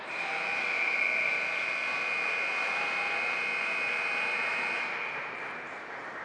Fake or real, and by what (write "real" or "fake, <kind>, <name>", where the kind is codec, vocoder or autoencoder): fake, vocoder, BigVGAN v2